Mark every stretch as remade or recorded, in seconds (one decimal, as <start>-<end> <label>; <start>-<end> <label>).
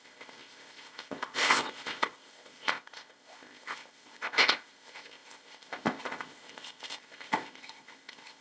0.0-8.4 remade